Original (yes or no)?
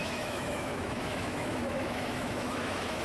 no